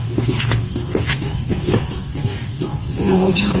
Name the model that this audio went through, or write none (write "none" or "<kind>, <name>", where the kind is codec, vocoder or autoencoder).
codec, SNAC